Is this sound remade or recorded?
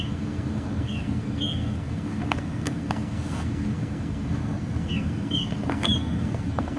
remade